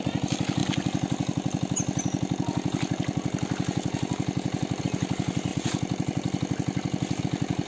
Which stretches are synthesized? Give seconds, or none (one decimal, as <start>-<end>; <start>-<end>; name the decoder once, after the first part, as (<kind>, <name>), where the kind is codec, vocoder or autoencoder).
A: none